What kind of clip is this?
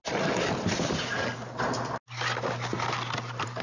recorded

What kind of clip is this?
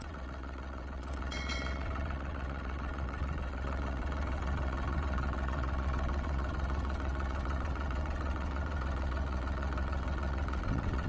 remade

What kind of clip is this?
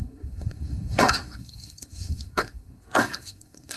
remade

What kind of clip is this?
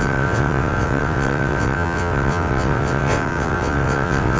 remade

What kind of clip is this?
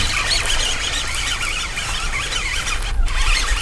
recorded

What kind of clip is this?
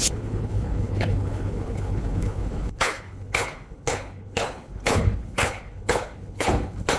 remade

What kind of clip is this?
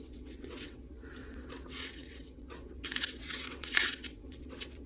remade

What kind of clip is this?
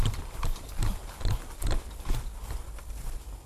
recorded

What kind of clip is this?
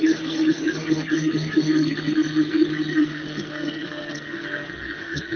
remade